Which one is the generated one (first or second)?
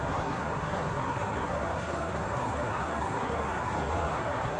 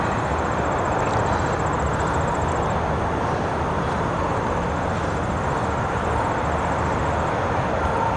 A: first